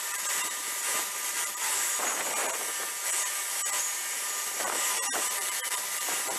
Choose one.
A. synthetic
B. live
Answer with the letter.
A